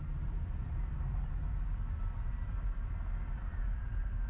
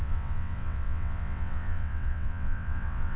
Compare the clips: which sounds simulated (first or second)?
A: second